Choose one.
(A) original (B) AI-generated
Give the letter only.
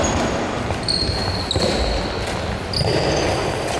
A